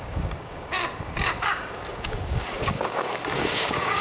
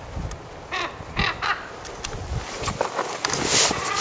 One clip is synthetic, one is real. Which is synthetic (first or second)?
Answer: first